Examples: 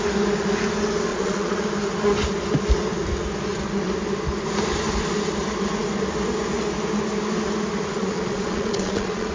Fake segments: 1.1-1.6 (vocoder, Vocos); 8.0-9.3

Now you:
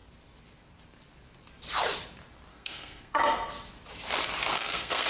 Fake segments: 2.5-3.2 (codec, SNAC); 4.5-5.1

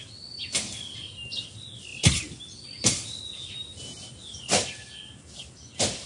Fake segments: none

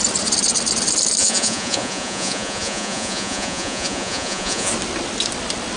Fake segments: 1.2-4.7 (vocoder, Vocos)

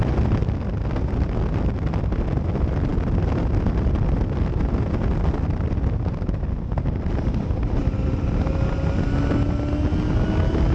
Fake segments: none